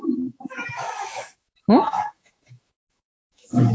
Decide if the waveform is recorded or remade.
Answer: remade